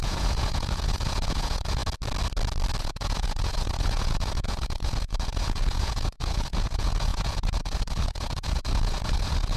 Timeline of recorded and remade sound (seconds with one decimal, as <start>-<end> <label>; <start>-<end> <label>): 0.0-1.8 remade; 1.8-2.8 recorded; 2.8-9.6 remade